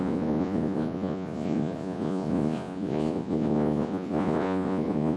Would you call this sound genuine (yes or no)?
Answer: no